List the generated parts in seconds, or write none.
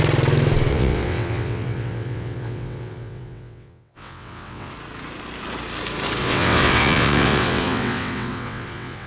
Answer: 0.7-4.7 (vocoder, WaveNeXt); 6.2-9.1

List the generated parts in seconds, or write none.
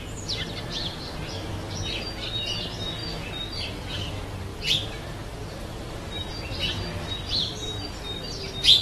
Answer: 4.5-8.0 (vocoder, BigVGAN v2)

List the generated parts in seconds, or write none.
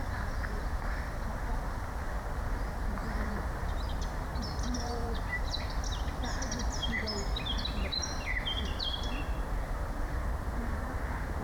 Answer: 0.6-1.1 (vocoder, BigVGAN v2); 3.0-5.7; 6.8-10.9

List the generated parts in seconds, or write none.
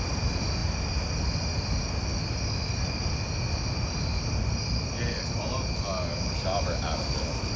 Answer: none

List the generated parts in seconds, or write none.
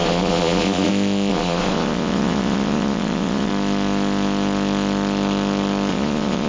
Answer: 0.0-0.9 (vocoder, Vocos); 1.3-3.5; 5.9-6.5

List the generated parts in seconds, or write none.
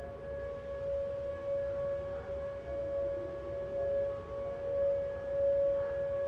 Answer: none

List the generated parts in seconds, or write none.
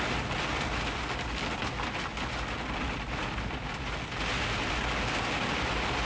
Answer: none